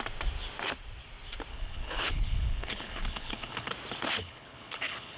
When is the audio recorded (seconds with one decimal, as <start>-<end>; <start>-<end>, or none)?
0.0-1.5; 3.7-4.2